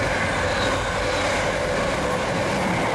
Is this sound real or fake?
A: real